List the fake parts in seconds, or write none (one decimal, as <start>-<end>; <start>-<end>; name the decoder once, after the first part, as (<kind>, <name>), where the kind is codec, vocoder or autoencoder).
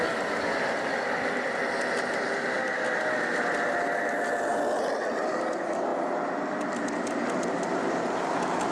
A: none